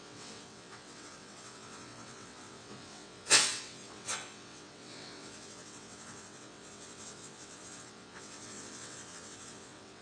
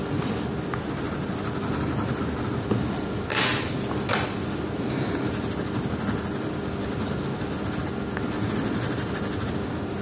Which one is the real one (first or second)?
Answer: second